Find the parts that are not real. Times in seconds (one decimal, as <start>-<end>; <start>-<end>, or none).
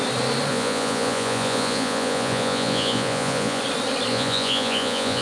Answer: 0.5-3.6; 4.1-5.2